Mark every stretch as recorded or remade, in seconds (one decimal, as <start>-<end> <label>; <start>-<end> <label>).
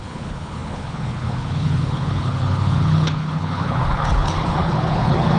0.0-5.4 remade